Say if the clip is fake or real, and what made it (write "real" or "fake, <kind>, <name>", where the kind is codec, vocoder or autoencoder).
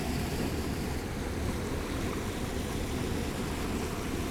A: real